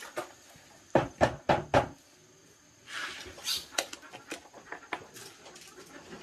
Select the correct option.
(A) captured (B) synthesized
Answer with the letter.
A